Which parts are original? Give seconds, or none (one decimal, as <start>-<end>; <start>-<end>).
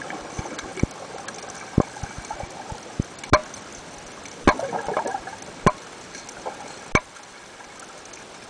0.0-8.5